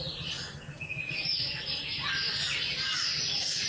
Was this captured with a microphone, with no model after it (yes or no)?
yes